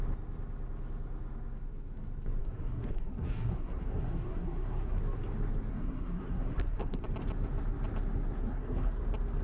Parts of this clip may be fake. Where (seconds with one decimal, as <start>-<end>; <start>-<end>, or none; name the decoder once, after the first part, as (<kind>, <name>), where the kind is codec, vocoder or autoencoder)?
2.4-5.0 (codec, SNAC); 5.7-7.0; 8.4-8.9